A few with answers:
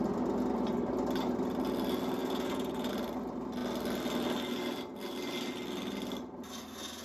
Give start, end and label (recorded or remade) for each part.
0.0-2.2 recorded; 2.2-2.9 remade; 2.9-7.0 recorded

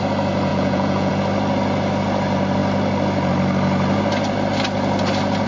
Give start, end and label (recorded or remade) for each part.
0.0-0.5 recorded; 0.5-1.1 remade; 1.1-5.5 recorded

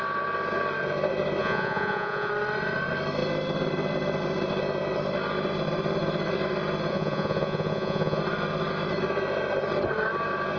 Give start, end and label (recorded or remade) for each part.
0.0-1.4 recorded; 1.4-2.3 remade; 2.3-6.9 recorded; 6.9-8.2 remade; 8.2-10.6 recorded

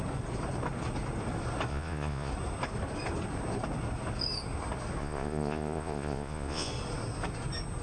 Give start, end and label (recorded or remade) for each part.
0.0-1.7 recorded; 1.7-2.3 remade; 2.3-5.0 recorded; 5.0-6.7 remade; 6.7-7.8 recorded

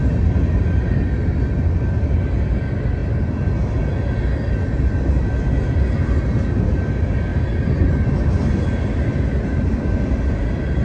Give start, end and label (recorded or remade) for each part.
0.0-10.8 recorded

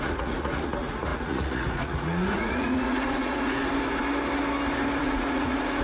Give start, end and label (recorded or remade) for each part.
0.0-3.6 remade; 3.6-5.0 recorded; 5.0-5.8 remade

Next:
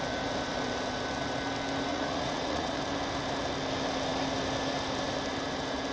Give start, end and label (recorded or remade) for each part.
0.0-1.9 recorded; 1.9-2.8 remade; 2.8-5.9 recorded